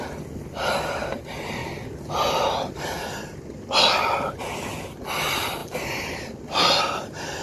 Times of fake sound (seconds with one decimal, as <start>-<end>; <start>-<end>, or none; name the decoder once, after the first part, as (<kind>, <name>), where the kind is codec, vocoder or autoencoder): 5.6-6.8 (vocoder, BigVGAN v2)